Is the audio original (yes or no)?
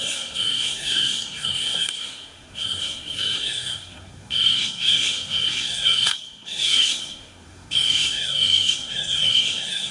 no